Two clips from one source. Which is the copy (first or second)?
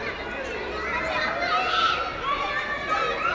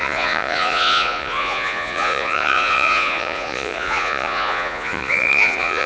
second